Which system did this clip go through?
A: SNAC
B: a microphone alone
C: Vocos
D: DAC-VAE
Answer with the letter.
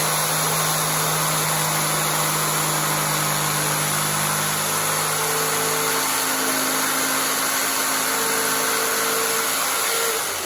B